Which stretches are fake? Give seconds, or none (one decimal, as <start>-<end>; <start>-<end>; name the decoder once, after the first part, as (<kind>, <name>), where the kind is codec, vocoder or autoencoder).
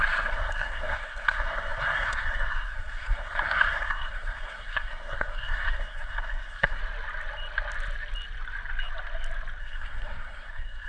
0.0-6.8 (codec, SNAC); 9.6-10.9